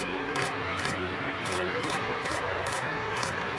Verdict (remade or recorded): remade